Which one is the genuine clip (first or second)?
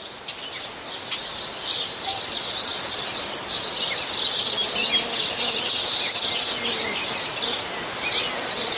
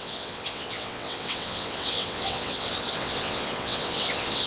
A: first